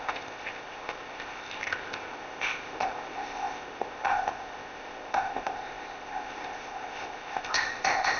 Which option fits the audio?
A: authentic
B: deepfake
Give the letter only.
B